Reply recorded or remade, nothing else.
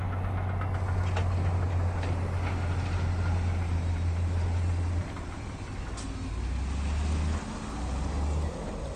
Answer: recorded